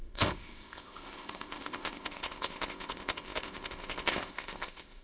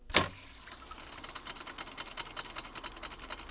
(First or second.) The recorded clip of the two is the second